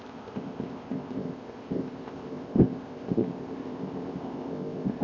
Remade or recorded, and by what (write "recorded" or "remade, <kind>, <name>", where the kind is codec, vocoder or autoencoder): remade, codec, ZipCodec